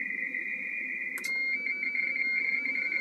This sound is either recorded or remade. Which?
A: recorded